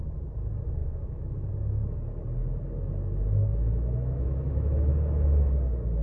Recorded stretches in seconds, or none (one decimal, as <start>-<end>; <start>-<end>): 0.0-0.8; 1.5-3.5; 4.9-6.0